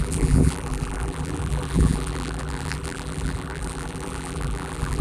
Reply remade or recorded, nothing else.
remade